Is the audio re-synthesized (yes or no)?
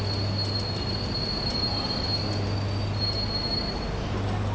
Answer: no